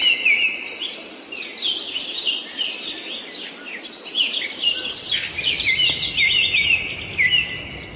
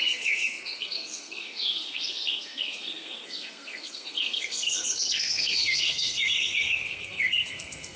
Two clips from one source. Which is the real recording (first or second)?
first